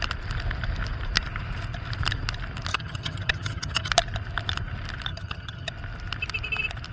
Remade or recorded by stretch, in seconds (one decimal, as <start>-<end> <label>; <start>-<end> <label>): 0.0-2.7 recorded; 2.7-3.9 remade; 3.9-5.1 recorded; 5.1-5.7 remade; 5.7-6.9 recorded